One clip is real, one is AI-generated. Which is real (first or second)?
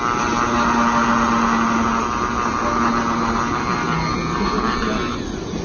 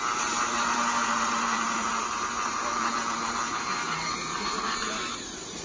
first